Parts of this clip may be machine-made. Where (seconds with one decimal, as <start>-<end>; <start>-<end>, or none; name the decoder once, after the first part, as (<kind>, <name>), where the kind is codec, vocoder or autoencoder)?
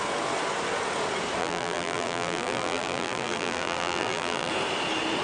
1.4-4.5 (vocoder, BigVGAN v2)